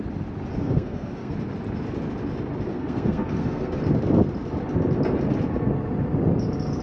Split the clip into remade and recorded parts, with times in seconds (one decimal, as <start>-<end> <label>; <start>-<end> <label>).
0.0-0.6 recorded; 0.6-1.3 remade; 1.3-2.7 recorded; 2.7-3.8 remade; 3.8-6.8 recorded